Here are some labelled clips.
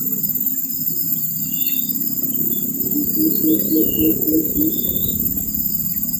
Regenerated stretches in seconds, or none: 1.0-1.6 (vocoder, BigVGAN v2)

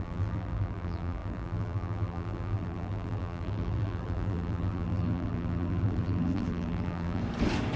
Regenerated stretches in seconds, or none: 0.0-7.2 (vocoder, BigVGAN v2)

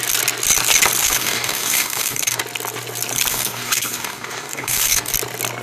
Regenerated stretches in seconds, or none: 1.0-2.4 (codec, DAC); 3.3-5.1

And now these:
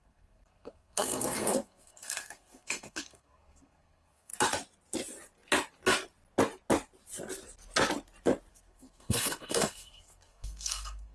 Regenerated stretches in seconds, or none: 0.0-4.3 (codec, SNAC); 8.5-11.1

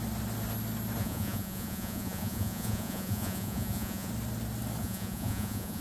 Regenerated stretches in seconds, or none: 1.0-4.1 (vocoder, Vocos); 4.8-5.8